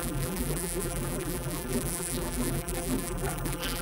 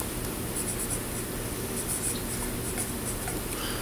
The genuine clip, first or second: second